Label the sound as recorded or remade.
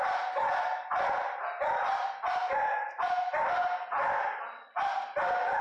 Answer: recorded